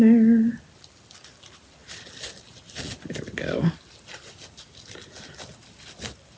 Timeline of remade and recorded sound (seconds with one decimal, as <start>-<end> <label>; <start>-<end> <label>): 0.0-6.4 recorded